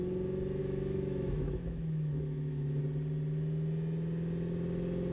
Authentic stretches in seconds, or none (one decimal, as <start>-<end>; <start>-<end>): 0.0-0.6; 2.8-5.1